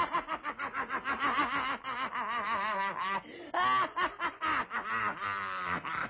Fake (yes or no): no